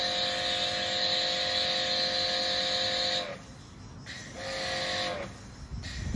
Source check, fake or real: real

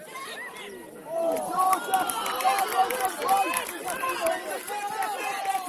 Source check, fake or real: real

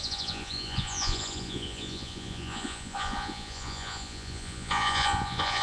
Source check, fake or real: fake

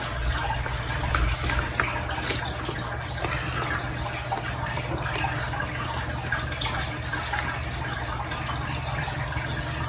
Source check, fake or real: real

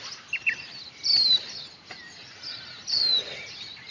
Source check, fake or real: real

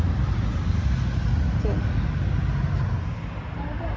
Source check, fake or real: real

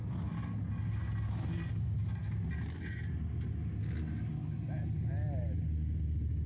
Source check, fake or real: real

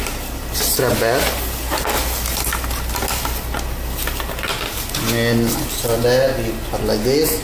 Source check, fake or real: real